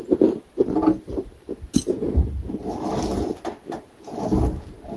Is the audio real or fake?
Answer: real